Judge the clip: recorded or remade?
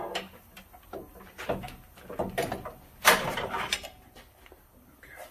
recorded